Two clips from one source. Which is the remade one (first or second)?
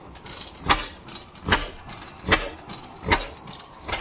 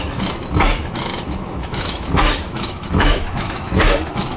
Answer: second